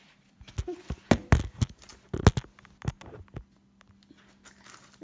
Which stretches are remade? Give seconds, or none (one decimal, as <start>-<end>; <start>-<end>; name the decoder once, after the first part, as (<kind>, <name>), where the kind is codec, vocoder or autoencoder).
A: none